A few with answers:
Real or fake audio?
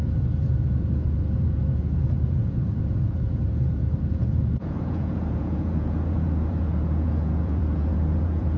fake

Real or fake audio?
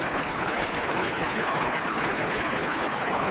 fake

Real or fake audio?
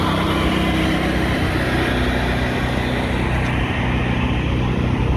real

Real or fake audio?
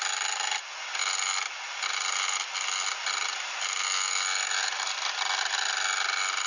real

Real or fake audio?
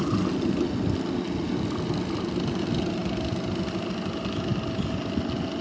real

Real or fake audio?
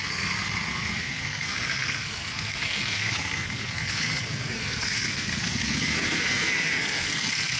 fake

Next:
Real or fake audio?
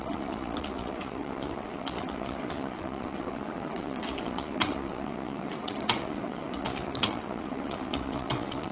fake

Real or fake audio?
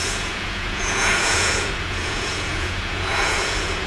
fake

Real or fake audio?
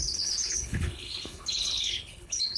fake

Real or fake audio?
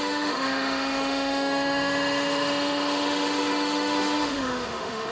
fake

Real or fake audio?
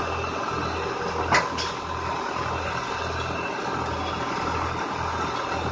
real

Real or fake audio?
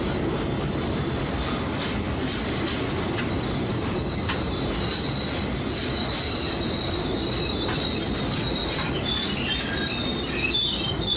real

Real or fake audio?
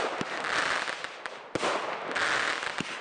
real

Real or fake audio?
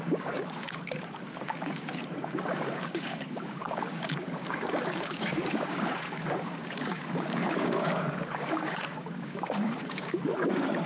fake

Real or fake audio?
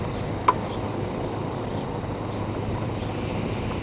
real